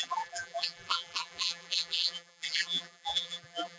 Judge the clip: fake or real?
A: fake